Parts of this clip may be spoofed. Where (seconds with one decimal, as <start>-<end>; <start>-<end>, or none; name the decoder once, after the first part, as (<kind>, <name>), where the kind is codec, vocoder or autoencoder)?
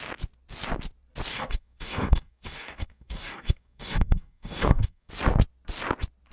1.3-5.1 (codec, DAC)